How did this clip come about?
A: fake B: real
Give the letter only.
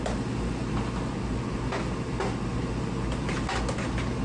B